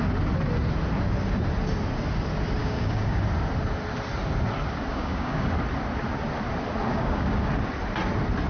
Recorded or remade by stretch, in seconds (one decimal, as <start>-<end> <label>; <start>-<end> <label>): 0.0-2.6 recorded; 2.6-3.2 remade; 3.2-4.9 recorded; 4.9-5.5 remade; 5.5-6.9 recorded; 6.9-7.5 remade; 7.5-8.5 recorded